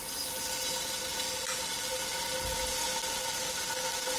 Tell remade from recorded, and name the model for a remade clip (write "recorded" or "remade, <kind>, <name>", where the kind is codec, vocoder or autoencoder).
recorded